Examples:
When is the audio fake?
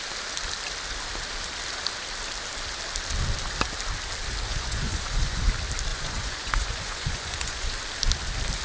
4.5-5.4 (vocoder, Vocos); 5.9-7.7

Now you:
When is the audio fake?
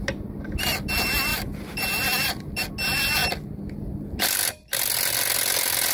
1.3-2.7 (vocoder, BigVGAN v2)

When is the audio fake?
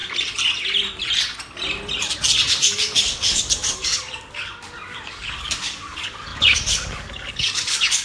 2.5-8.0 (codec, DAC)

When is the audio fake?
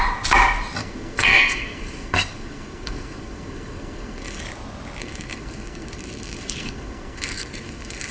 0.8-4.4 (codec, SNAC); 5.0-8.1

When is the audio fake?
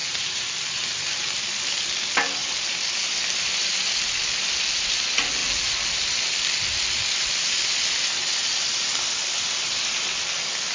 0.0-1.0 (vocoder, BigVGAN v2)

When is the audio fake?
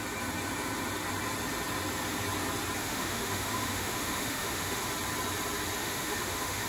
2.8-4.9 (autoencoder, DAC-VAE); 5.8-6.7